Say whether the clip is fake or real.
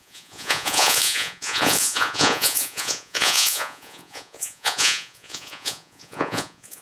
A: fake